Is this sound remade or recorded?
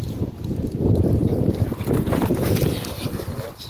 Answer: recorded